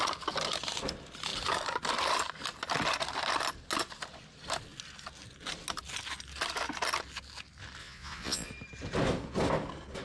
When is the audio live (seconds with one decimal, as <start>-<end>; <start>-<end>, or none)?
0.0-7.8; 8.5-10.0